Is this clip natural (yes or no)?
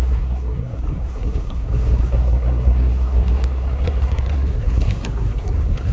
no